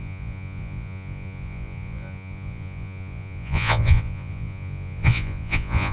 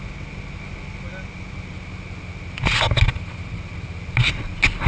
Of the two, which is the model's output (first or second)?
first